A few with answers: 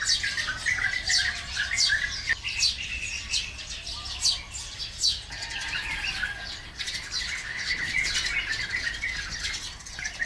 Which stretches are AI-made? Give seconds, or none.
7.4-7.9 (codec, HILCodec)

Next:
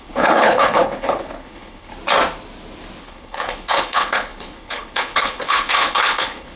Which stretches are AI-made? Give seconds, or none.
0.0-1.9 (codec, HILCodec); 3.0-6.6

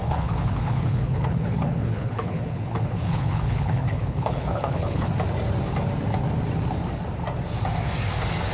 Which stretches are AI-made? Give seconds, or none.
0.0-5.1 (codec, HILCodec)

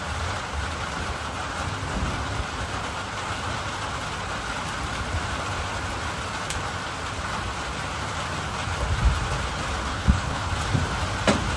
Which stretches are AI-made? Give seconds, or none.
9.9-10.5 (codec, HILCodec)

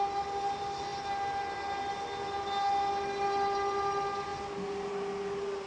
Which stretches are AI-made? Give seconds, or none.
none

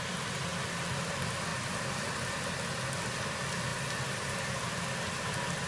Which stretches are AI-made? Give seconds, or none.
none

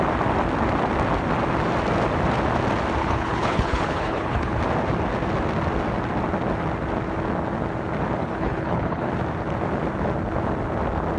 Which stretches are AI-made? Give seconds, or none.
3.0-4.6 (codec, HILCodec); 8.2-9.1

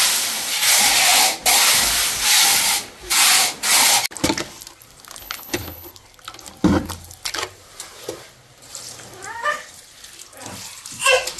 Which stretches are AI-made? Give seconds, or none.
5.2-5.9 (codec, HILCodec)